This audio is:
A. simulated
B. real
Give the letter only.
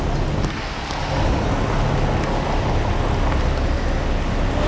B